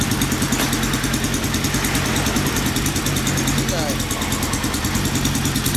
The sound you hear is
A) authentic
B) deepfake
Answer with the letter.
A